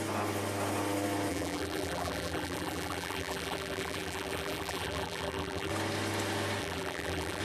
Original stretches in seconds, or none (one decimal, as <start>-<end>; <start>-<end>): 0.0-1.3; 5.7-6.6